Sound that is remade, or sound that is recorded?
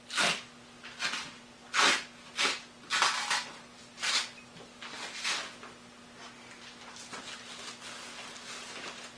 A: recorded